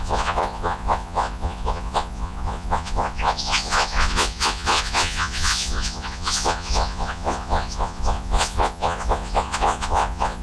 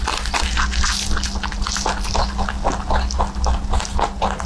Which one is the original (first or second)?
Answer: second